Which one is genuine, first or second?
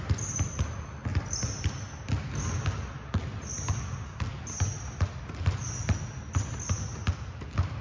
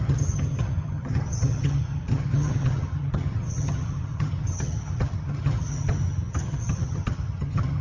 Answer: first